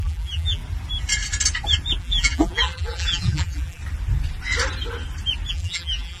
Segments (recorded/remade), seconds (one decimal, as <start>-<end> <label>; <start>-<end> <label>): 0.0-0.6 remade; 0.6-2.0 recorded; 2.0-3.8 remade; 3.8-5.5 recorded; 5.5-6.2 remade